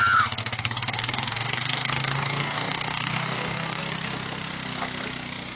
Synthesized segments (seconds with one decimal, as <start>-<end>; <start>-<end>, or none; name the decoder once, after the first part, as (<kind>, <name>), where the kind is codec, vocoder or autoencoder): 0.4-3.8 (codec, DAC)